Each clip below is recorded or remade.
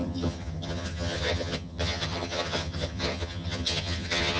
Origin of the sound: remade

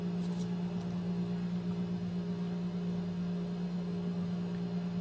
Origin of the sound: recorded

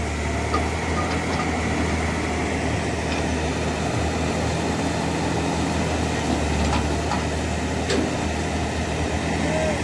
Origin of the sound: recorded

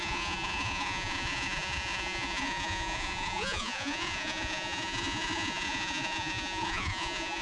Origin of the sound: remade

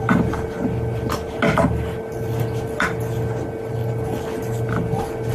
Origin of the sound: recorded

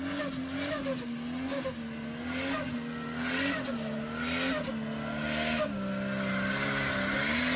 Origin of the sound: recorded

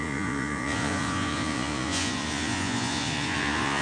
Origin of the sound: remade